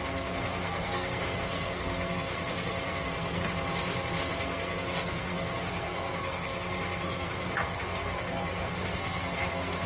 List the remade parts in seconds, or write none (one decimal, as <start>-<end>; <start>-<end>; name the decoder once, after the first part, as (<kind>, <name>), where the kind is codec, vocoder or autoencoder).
0.0-3.4 (codec, SNAC); 4.2-9.9